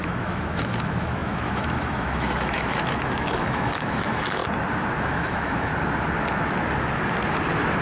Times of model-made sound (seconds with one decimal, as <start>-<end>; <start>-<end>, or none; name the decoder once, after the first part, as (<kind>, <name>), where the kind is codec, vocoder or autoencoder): 0.0-4.4 (autoencoder, DAC-VAE); 5.0-5.7